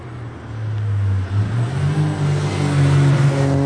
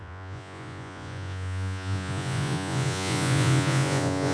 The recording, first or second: first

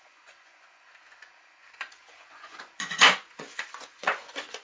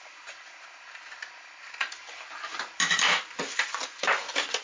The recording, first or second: second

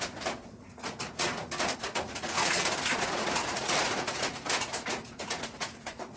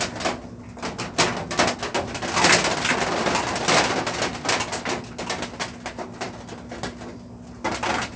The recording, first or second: second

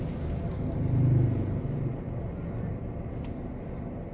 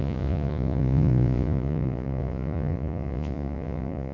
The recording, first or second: first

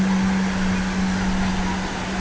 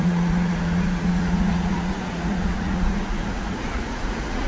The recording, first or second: first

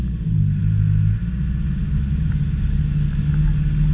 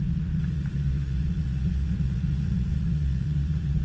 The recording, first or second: first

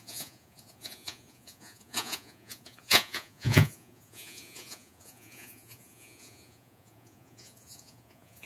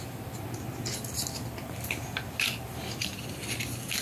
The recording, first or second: second